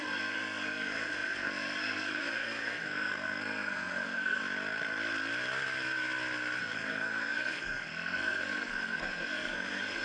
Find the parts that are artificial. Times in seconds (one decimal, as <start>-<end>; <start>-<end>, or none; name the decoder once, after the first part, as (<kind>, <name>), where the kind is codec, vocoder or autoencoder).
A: 0.0-4.4 (codec, SNAC); 6.6-10.0